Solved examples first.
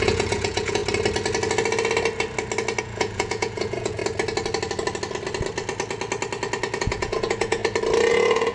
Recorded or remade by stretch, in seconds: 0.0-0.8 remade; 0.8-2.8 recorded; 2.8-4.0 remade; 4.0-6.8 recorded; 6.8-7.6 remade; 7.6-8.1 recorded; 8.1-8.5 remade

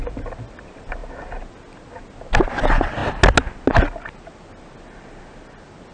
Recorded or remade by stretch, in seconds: 0.0-5.9 recorded

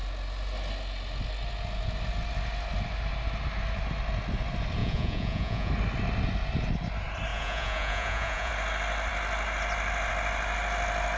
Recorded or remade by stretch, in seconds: 0.0-4.8 recorded; 4.8-5.7 remade; 5.7-7.3 recorded; 7.3-8.5 remade; 8.5-11.2 recorded

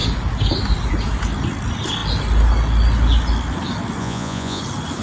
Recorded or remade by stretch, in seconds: 0.0-4.0 recorded; 4.0-4.6 remade; 4.6-5.0 recorded

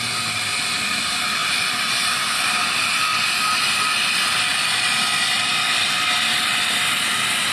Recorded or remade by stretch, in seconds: 0.0-1.4 recorded; 1.4-2.4 remade; 2.4-7.5 recorded

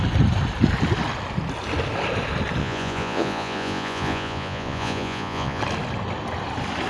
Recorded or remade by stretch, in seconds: 0.0-2.6 recorded; 2.6-5.6 remade; 5.6-6.9 recorded